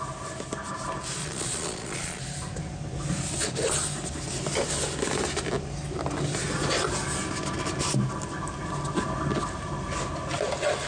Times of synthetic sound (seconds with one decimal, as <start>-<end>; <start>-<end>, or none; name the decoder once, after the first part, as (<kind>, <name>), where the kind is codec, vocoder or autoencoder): 1.2-2.2 (vocoder, Vocos)